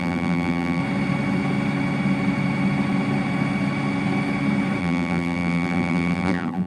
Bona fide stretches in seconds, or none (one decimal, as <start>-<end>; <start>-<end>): 0.8-4.8